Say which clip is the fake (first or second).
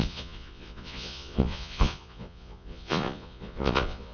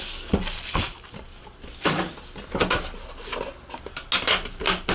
first